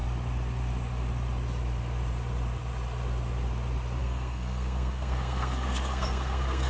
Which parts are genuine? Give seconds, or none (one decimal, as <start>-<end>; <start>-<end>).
0.0-4.0